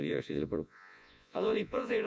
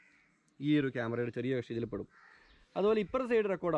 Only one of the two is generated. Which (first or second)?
first